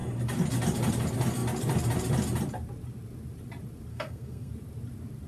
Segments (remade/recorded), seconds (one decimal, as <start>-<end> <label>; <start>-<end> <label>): 0.0-3.9 recorded; 3.9-4.5 remade; 4.5-5.3 recorded